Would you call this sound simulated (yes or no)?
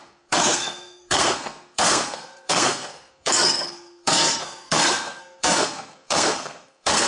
yes